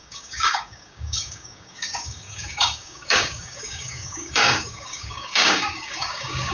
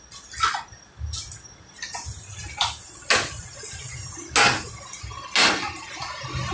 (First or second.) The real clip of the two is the second